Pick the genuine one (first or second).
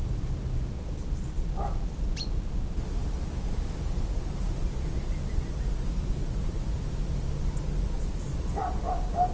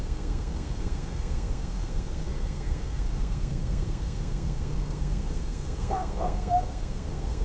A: first